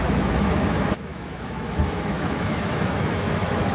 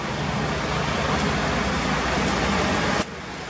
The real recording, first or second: second